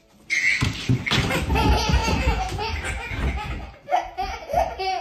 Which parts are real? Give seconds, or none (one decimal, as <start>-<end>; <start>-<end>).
0.0-5.0